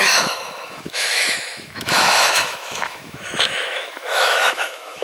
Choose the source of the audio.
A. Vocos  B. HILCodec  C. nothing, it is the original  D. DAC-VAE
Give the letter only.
D